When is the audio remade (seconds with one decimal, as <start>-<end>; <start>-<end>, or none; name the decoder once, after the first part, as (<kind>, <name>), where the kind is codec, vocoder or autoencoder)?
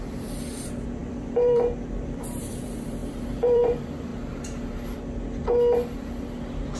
0.0-4.1 (vocoder, BigVGAN v2)